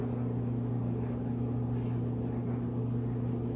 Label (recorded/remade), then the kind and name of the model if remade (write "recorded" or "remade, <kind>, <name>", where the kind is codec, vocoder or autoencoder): recorded